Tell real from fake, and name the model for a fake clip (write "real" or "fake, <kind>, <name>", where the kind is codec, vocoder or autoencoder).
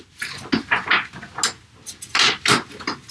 real